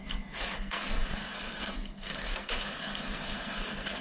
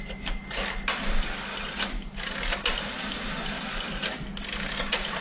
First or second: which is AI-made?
first